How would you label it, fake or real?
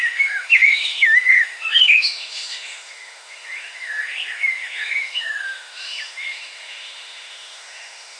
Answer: fake